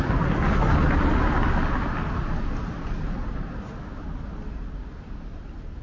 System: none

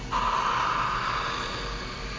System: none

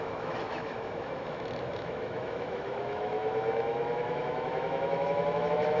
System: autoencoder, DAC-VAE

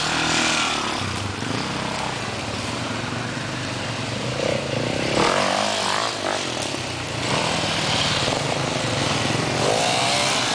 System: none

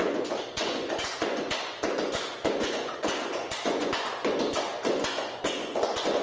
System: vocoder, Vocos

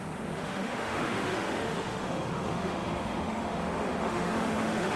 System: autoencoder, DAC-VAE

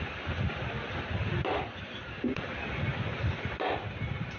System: none